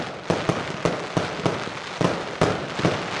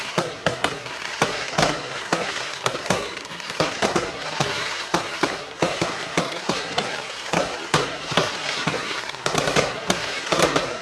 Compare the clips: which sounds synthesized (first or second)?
second